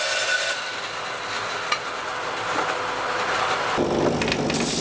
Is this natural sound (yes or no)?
yes